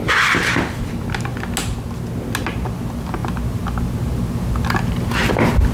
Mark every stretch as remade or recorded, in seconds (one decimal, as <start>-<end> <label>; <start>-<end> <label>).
0.0-5.7 recorded